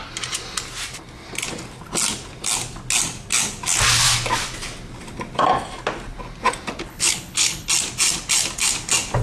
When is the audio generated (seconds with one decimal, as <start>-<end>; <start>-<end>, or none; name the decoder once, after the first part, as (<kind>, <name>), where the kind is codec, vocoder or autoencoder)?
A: 6.9-7.7 (codec, HILCodec)

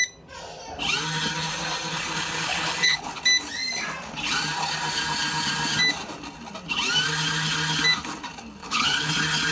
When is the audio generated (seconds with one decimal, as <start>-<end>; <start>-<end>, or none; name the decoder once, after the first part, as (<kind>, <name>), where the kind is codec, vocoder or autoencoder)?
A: 1.9-3.1 (codec, HILCodec); 8.6-9.1

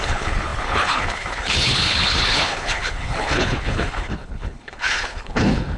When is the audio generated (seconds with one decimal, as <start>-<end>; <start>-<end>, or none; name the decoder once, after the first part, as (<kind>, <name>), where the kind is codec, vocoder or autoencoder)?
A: 0.0-5.8 (codec, HILCodec)

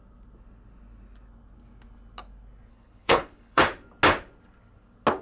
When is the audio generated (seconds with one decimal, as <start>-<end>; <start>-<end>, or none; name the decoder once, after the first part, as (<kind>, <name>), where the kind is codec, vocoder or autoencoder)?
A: 2.7-3.6 (codec, HILCodec)

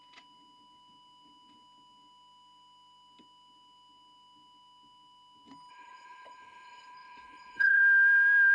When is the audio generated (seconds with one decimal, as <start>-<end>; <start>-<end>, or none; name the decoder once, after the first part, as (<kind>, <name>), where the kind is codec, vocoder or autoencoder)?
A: 5.7-7.8 (codec, HILCodec)

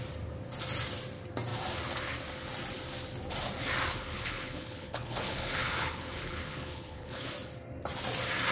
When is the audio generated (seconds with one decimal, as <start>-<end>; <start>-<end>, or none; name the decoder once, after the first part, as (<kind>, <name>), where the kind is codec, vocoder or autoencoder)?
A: 4.0-7.3 (codec, HILCodec)

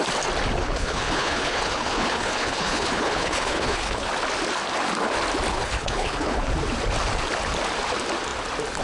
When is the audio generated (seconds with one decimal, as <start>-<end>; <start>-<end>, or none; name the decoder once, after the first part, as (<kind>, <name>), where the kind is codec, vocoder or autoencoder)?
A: 0.6-4.1 (codec, HILCodec); 5.5-6.5

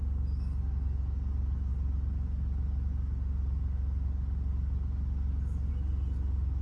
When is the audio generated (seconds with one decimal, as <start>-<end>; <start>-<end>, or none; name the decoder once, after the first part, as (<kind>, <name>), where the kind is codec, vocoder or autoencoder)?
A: none